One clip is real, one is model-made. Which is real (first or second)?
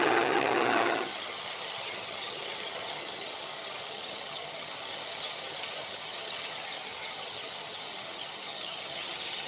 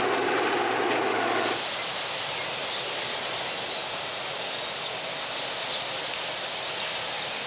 second